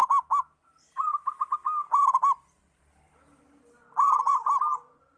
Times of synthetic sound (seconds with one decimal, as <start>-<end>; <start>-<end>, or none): none